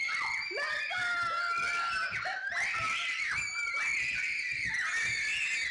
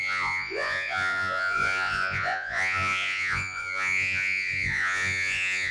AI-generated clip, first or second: second